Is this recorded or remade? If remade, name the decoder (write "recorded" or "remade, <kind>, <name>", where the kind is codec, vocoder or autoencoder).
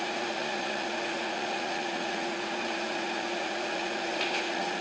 remade, vocoder, Vocos